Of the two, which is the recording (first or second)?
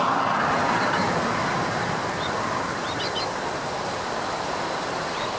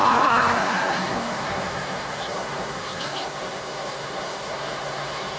first